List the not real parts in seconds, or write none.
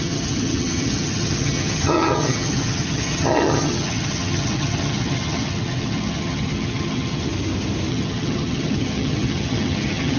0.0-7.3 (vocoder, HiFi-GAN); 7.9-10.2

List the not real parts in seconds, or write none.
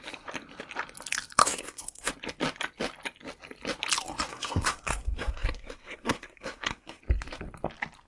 1.4-2.1 (codec, SNAC); 4.3-7.0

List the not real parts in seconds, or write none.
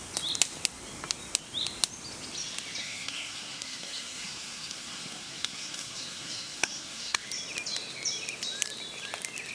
2.8-7.2 (codec, SNAC)